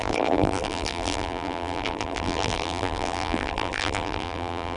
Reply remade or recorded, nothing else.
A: remade